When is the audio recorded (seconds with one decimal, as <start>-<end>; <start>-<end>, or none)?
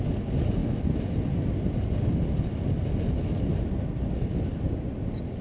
0.0-5.4